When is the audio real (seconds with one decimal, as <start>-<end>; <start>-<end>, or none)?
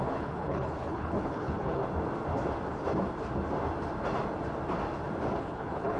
1.8-5.4